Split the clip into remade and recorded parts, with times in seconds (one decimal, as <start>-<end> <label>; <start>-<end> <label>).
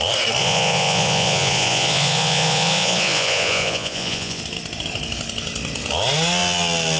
0.0-0.4 recorded; 0.4-4.4 remade; 4.4-7.0 recorded